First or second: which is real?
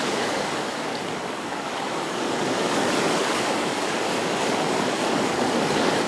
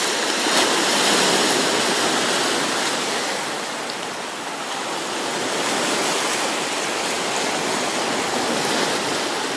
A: second